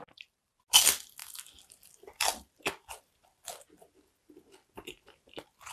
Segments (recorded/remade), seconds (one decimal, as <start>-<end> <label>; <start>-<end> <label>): 0.0-1.2 recorded; 1.2-2.6 remade; 2.6-5.7 recorded